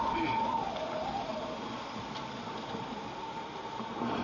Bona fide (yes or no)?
yes